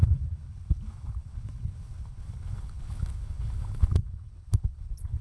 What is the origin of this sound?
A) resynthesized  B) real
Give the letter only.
A